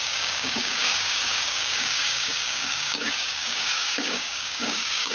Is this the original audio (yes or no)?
no